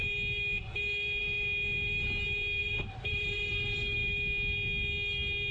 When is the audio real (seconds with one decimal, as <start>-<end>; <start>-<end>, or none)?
0.0-2.6; 3.6-5.5